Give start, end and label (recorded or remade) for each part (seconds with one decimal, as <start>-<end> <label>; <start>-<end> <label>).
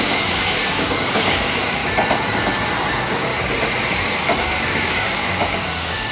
0.0-1.8 remade; 1.8-2.9 recorded; 2.9-3.3 remade; 3.3-4.4 recorded; 4.4-6.1 remade